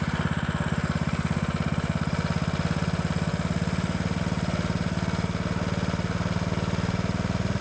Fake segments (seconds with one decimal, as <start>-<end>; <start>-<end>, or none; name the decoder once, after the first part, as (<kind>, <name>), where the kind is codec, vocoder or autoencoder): none

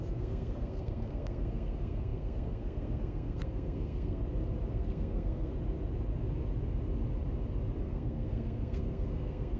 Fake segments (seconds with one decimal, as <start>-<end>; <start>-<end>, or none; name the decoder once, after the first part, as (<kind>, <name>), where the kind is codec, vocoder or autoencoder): 0.0-4.2 (codec, SNAC); 4.7-5.5; 7.8-9.6

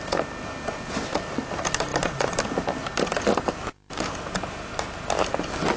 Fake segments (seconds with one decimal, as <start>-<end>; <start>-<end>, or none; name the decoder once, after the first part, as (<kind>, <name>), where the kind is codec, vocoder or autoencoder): none

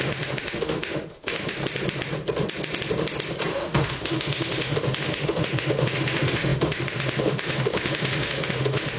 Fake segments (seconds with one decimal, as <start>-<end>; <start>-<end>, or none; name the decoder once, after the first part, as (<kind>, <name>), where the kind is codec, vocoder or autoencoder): 0.0-1.6 (autoencoder, DAC-VAE); 3.5-9.0

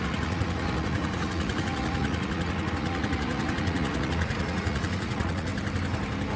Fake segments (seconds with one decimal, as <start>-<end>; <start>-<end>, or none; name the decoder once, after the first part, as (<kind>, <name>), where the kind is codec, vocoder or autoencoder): 0.0-5.5 (vocoder, Vocos)

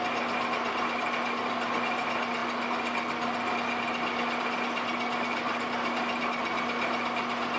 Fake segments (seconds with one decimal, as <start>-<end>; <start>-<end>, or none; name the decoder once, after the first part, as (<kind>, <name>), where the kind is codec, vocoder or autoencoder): none

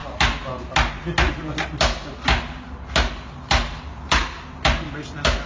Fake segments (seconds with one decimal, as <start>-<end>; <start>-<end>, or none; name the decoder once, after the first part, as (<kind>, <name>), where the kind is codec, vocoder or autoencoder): none

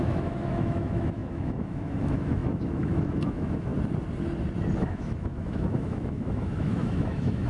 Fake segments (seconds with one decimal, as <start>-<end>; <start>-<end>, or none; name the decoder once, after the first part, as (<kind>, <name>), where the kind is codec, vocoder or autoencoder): 0.0-3.7 (autoencoder, DAC-VAE); 4.8-7.5